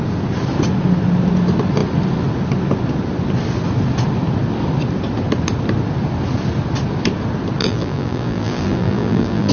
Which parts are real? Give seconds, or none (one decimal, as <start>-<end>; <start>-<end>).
0.0-7.6

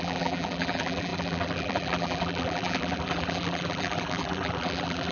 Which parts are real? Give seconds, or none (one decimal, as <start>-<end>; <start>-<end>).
none

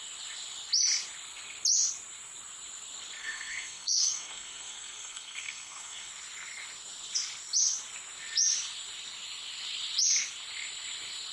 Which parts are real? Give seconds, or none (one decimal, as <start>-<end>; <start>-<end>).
0.0-3.2; 6.1-11.3

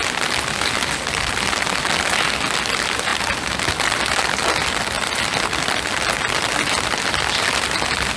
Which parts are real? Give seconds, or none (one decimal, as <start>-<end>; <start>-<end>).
0.0-8.2

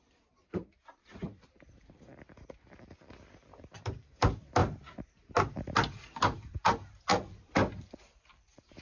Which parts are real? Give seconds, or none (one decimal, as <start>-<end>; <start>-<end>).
4.6-5.5

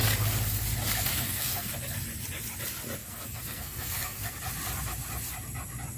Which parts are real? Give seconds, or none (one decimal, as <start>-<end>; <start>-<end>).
0.0-1.1; 1.7-3.0; 4.4-6.0

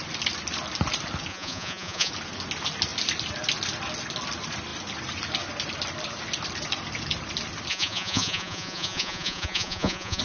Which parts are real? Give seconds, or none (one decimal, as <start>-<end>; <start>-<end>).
0.0-1.3; 2.1-7.7

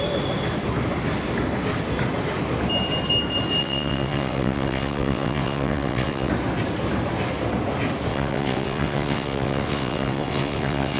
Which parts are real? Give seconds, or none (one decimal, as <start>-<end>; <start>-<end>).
0.0-3.6; 6.3-8.1